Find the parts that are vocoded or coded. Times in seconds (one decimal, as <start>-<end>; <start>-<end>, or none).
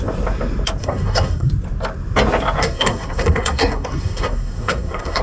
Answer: 0.8-1.5; 2.6-5.2